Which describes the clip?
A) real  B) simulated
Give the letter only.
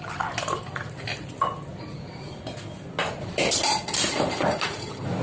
A